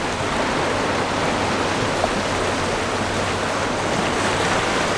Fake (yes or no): no